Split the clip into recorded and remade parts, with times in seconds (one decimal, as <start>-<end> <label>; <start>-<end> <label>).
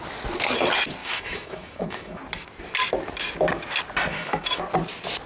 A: 0.0-1.0 recorded; 1.0-2.2 remade; 2.2-4.1 recorded; 4.1-4.6 remade; 4.6-5.3 recorded